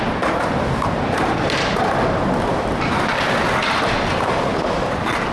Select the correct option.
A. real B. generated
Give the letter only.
A